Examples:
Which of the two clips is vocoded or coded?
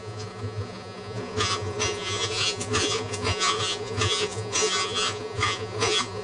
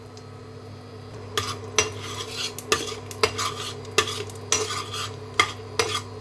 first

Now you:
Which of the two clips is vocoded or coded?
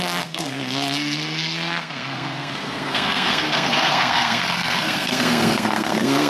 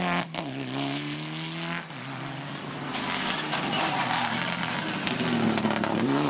first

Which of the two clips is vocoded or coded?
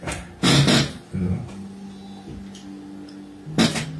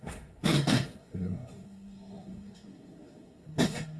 second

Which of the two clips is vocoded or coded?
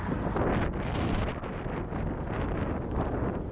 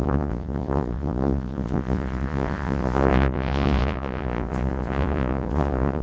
second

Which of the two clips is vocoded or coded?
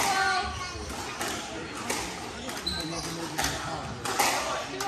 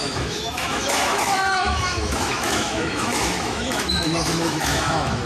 second